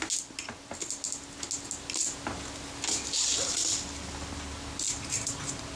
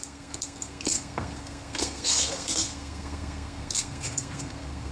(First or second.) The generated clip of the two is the second